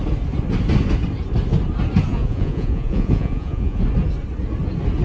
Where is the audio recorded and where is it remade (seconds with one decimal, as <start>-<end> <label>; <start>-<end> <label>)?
0.0-2.1 recorded; 2.1-3.8 remade; 3.8-5.0 recorded